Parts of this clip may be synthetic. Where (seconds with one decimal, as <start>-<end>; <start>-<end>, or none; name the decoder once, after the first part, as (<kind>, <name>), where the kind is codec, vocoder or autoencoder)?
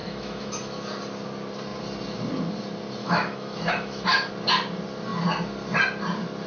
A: 0.0-0.5 (autoencoder, DAC-VAE); 3.0-4.3